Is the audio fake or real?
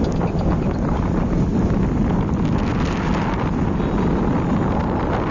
real